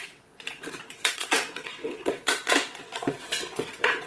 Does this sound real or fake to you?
fake